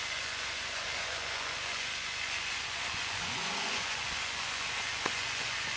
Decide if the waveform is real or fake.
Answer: fake